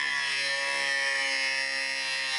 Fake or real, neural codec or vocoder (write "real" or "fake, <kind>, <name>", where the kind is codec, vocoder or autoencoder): real